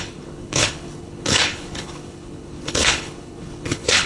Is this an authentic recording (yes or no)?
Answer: no